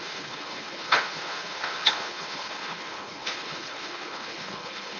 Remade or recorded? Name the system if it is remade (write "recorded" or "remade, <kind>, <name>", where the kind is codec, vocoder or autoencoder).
remade, codec, HILCodec